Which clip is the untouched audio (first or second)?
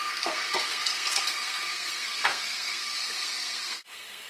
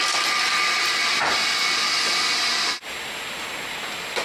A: second